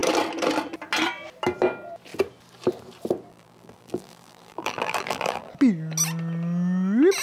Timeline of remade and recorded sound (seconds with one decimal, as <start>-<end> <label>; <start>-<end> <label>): 0.0-3.3 recorded; 3.3-5.5 remade; 5.5-7.2 recorded